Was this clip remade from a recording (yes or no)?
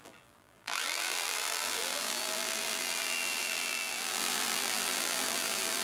yes